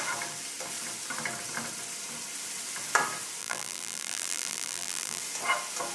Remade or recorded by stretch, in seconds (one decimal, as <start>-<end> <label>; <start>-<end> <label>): 0.0-3.4 recorded; 3.4-5.2 remade; 5.2-5.9 recorded